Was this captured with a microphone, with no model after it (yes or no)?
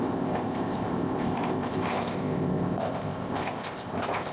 no